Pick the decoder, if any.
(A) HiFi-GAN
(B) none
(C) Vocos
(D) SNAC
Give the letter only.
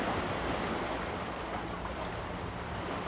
B